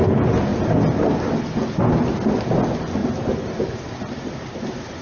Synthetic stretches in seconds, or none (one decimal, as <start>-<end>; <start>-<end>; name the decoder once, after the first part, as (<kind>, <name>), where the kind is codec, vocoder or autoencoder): 3.0-5.0 (vocoder, BigVGAN v2)